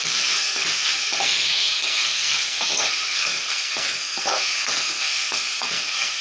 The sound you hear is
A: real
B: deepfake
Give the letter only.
B